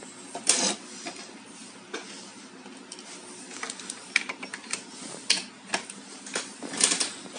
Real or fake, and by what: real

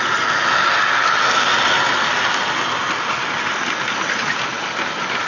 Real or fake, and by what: real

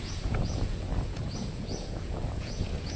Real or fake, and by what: fake, vocoder, Vocos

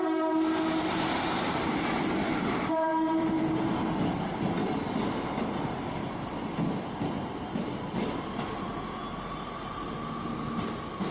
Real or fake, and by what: real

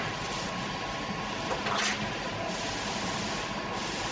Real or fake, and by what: real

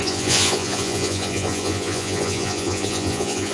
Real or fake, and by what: fake, vocoder, Vocos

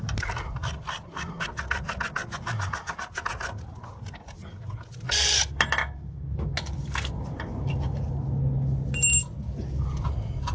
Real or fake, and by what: real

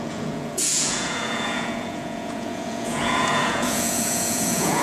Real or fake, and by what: fake, vocoder, Vocos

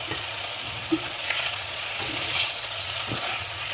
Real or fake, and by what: fake, vocoder, Vocos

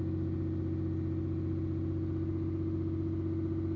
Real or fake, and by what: real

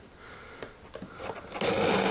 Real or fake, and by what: real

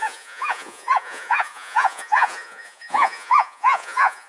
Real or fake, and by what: fake, vocoder, Vocos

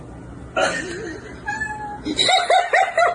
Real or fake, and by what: real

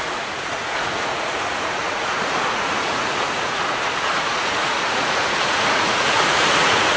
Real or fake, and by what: fake, vocoder, Vocos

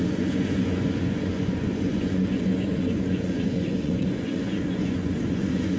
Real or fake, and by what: fake, vocoder, Vocos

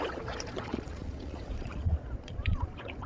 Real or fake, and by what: fake, vocoder, Vocos